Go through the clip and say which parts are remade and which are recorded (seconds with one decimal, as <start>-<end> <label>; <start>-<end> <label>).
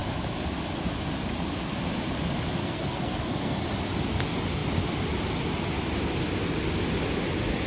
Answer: 0.0-2.6 recorded; 2.6-3.6 remade; 3.6-7.7 recorded